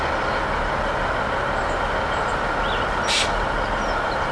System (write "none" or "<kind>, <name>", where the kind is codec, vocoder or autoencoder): none